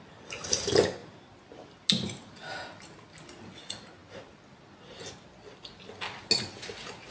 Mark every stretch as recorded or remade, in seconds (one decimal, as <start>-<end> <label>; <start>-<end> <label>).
0.0-7.1 recorded

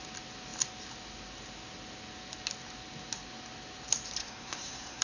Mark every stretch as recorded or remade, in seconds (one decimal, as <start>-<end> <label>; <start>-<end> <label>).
0.0-4.2 recorded; 4.2-5.0 remade